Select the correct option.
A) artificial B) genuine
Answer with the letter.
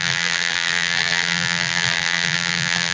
A